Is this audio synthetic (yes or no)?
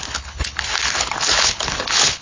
yes